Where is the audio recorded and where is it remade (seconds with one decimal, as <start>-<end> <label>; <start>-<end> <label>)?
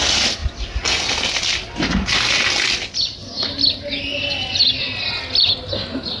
0.0-6.2 recorded